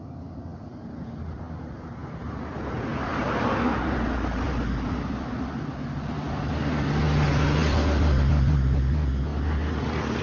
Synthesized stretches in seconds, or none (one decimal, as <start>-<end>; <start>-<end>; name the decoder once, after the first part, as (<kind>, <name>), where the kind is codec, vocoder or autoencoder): none

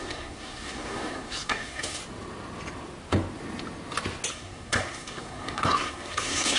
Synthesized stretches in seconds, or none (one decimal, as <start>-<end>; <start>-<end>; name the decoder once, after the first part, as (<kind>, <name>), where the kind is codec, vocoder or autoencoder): 0.0-2.0 (codec, SNAC); 4.3-6.6

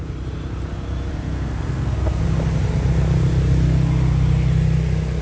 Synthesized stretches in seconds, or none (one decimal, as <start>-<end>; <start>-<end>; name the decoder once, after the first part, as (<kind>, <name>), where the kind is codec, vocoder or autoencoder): 1.1-2.2 (codec, SNAC)

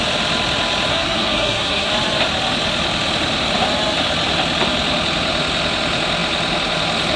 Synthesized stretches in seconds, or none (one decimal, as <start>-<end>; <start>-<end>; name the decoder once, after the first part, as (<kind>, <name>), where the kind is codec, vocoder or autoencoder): 0.9-1.9 (codec, SNAC)